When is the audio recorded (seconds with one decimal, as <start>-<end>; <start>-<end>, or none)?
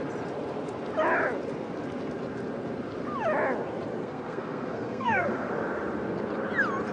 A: 0.0-4.0; 5.5-6.9